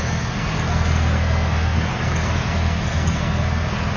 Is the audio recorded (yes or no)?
no